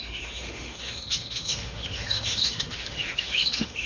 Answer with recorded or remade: remade